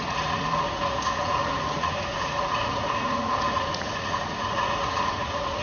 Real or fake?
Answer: fake